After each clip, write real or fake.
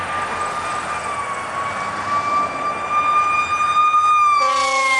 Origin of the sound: real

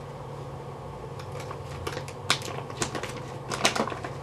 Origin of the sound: real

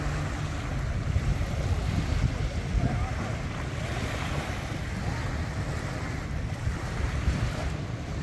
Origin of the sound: real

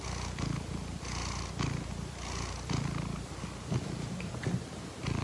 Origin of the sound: real